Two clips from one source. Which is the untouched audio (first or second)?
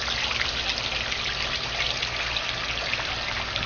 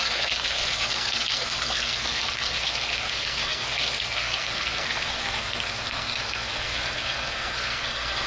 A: first